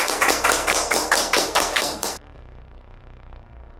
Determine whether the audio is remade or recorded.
remade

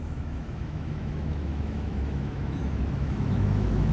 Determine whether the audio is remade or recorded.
remade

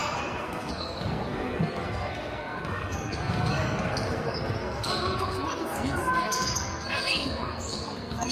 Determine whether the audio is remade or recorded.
remade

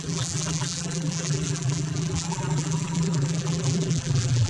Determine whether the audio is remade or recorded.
remade